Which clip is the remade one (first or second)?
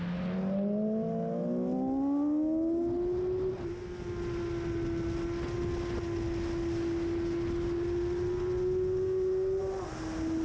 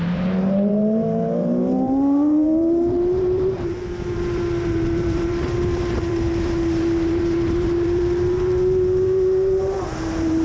second